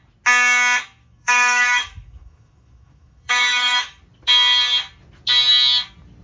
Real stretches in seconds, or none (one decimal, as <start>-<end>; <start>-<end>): 0.0-1.0; 4.0-6.2

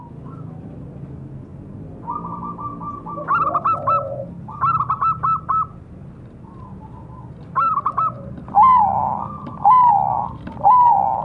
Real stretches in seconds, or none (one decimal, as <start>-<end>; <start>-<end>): 0.0-11.2

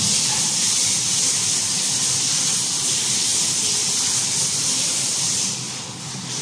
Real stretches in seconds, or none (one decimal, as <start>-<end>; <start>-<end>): 1.1-1.7; 3.3-5.3

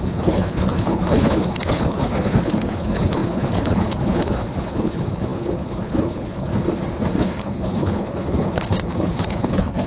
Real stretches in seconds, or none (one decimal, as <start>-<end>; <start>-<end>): 6.5-7.2

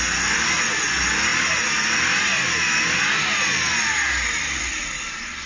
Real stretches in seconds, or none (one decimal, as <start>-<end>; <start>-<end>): 0.0-5.5

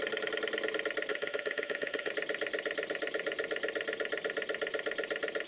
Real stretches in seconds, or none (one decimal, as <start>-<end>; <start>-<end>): 0.0-1.1; 2.1-5.5